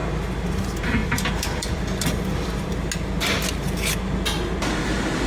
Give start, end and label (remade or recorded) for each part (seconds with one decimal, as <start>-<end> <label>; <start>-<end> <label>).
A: 0.0-1.0 recorded; 1.0-2.9 remade; 2.9-5.3 recorded